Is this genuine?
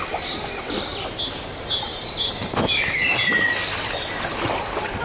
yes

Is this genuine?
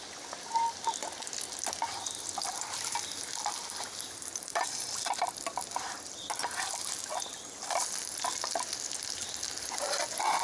yes